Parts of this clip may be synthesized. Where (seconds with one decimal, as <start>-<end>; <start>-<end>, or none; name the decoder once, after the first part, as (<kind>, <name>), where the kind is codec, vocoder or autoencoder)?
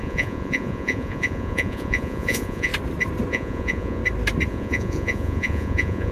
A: 0.0-2.7 (vocoder, Vocos); 3.3-4.0; 4.5-6.1